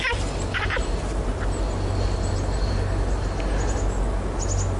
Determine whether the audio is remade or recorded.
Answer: recorded